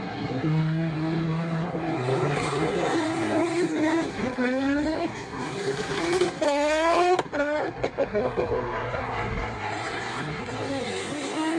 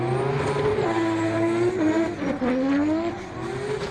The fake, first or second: first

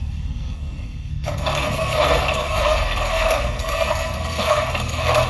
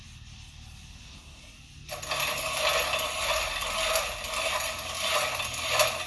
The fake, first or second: first